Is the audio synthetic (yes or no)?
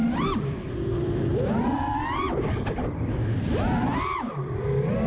yes